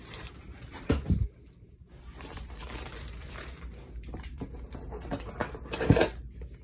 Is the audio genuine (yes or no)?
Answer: no